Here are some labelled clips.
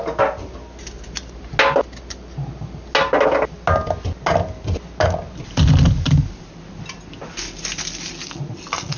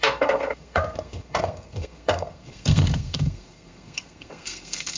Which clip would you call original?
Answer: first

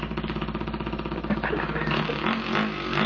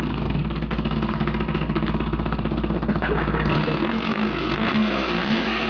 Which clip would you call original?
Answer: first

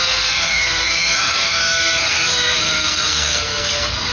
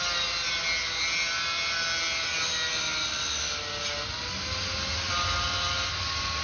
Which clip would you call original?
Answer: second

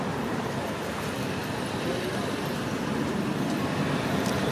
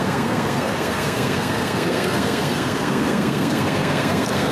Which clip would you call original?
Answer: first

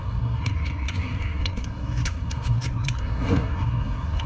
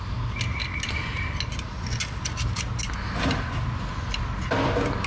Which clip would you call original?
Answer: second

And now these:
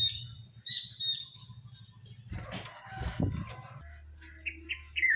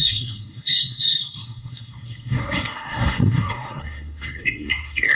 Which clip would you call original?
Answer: first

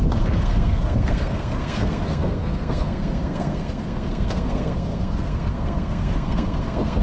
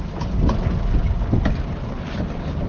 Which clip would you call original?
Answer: second